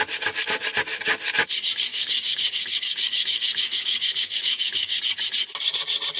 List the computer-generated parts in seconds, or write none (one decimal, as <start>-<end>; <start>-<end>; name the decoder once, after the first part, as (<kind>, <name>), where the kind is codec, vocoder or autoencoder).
1.9-5.0 (codec, DAC)